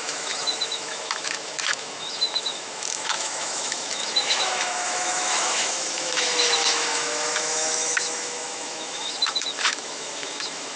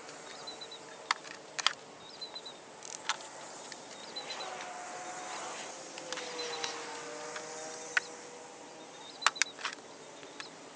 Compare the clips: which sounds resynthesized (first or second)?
first